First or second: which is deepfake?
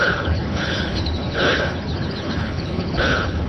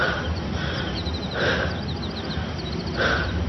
first